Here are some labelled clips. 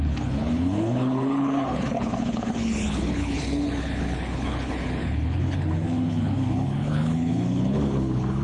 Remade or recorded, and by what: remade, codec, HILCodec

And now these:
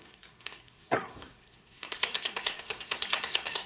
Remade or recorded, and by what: remade, codec, SNAC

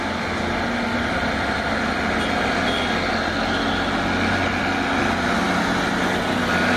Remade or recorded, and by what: recorded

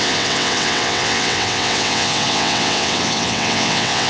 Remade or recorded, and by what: remade, vocoder, WaveNeXt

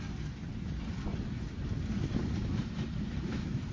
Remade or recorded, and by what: recorded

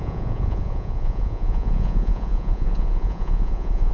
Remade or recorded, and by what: remade, vocoder, Vocos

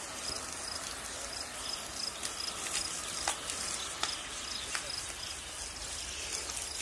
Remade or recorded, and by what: recorded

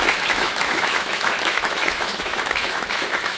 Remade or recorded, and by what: remade, autoencoder, DAC-VAE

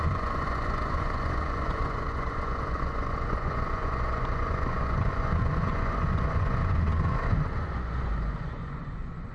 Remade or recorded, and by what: remade, vocoder, Vocos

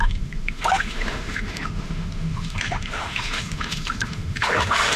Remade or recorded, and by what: remade, autoencoder, DAC-VAE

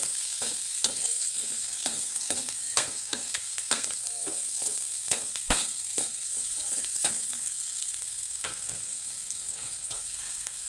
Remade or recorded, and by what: remade, codec, SNAC